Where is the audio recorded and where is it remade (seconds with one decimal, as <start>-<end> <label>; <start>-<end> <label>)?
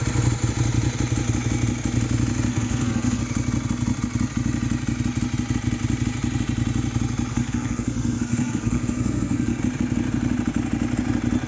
0.0-2.5 recorded; 2.5-3.2 remade; 3.2-7.3 recorded; 7.3-9.6 remade; 9.6-11.5 recorded